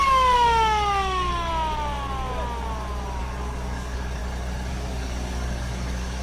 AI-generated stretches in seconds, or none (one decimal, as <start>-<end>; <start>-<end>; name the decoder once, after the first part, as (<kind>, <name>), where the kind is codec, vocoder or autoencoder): 0.0-1.5 (codec, DAC); 3.2-4.2; 4.7-6.2